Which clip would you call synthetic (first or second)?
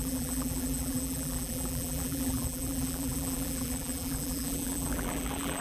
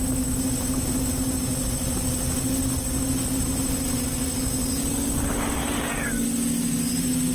first